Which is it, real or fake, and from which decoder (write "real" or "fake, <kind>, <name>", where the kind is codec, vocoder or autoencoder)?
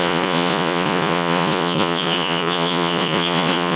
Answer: fake, vocoder, Vocos